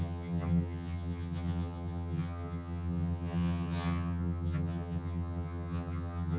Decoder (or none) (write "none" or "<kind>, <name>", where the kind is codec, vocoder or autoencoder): vocoder, HiFi-GAN